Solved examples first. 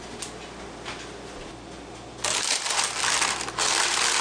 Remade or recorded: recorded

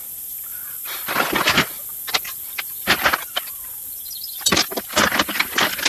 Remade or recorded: recorded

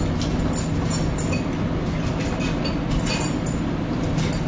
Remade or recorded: recorded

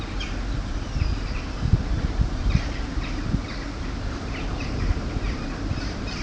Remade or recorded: remade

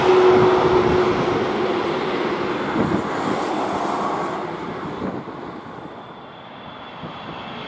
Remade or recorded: recorded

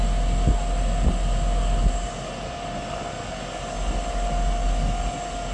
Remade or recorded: recorded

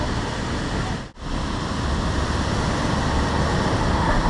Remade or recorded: recorded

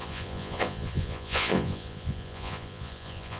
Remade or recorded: remade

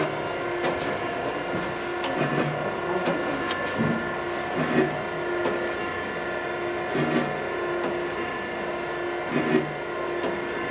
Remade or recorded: recorded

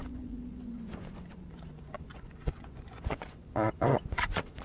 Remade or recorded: remade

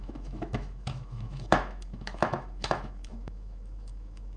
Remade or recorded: remade